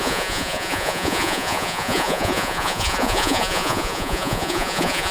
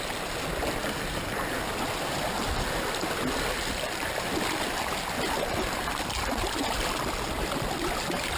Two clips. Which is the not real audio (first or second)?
first